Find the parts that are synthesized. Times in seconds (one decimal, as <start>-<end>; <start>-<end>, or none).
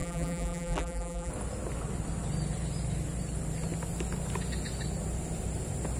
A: 0.0-1.3